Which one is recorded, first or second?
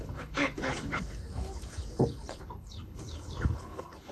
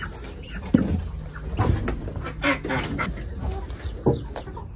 second